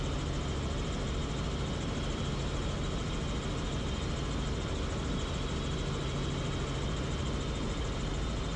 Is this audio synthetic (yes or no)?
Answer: no